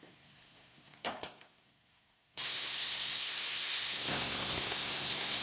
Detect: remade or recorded remade